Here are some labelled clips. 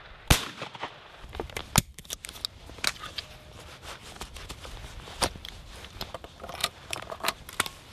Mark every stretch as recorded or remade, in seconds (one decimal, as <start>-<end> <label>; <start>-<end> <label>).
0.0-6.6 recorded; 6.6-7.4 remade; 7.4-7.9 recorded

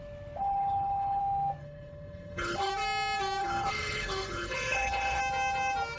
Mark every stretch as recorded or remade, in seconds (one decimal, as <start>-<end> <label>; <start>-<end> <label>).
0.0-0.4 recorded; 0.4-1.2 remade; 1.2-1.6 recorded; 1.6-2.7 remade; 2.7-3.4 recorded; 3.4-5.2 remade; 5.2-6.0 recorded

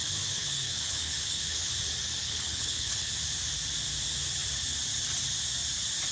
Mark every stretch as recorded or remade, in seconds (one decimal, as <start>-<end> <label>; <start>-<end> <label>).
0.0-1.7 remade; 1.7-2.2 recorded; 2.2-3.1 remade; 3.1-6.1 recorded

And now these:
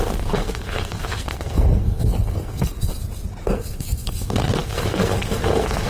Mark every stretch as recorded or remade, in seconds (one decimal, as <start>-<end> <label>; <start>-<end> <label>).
0.0-2.9 remade; 2.9-3.4 recorded; 3.4-5.9 remade

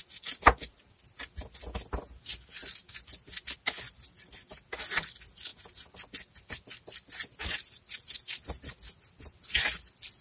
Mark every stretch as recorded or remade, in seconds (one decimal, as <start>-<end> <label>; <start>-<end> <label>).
0.0-0.8 remade; 0.8-2.6 recorded; 2.6-3.8 remade; 3.8-10.2 recorded

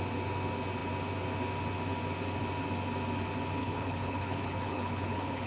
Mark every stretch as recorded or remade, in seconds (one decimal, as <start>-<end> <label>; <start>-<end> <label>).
0.0-3.6 recorded; 3.6-5.5 remade

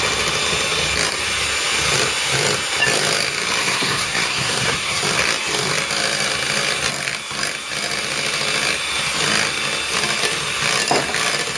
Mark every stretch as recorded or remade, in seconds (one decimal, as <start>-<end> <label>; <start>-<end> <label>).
0.0-3.6 recorded; 3.6-5.0 remade; 5.0-11.6 recorded